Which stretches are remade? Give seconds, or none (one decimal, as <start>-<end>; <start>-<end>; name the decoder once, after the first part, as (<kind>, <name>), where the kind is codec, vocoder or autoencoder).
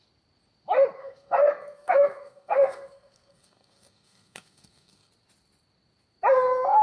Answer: 1.0-5.1 (codec, SNAC)